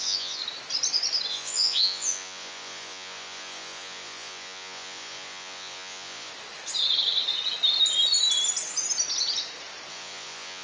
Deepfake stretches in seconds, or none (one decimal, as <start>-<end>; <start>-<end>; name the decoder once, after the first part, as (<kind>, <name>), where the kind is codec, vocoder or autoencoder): 0.0-0.4 (vocoder, Vocos); 1.3-6.3; 9.9-10.6